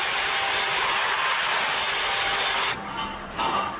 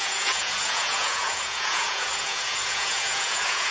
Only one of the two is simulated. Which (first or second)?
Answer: second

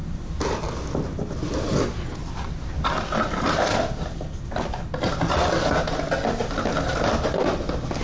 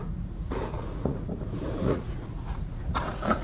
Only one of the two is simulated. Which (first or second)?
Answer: second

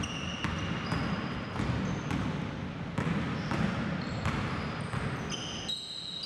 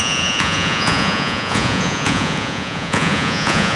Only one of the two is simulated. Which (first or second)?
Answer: second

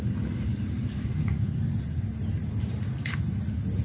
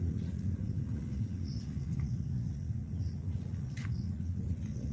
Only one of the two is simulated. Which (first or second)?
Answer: second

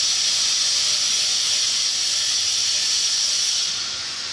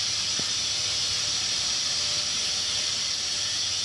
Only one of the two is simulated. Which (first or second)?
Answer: first